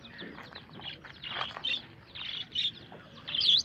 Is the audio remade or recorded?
recorded